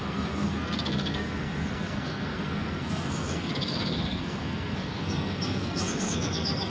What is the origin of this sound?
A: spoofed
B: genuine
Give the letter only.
A